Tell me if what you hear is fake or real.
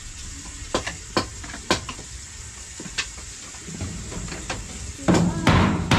real